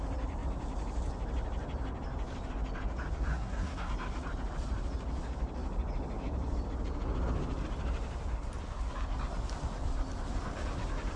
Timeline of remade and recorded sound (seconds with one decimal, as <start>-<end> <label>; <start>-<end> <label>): 0.0-3.3 recorded; 3.3-3.9 remade; 3.9-11.2 recorded